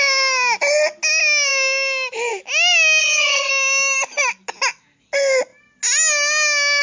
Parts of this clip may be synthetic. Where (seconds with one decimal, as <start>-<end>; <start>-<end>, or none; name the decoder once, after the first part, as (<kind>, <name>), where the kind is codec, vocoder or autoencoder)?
3.0-3.5 (vocoder, HiFi-GAN)